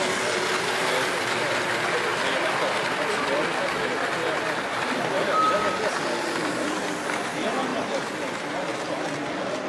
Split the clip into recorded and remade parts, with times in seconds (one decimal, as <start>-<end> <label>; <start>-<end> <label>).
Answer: 0.0-9.7 recorded